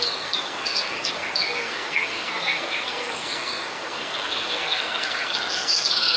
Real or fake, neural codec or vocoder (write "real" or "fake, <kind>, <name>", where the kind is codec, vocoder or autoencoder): fake, codec, SNAC